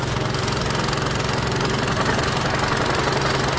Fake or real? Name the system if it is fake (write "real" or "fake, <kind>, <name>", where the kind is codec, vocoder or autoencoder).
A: real